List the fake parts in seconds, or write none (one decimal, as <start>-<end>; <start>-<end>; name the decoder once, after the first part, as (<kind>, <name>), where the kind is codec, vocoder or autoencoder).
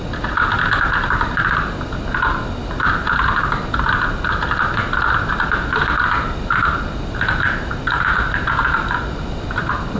none